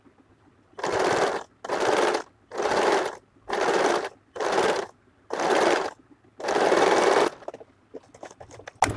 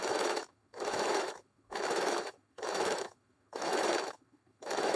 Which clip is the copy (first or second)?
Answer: second